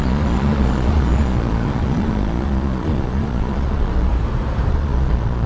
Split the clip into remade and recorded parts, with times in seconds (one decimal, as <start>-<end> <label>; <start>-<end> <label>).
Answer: 0.0-4.1 remade; 4.1-4.7 recorded; 4.7-5.5 remade